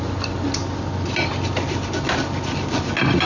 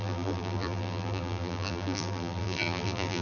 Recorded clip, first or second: first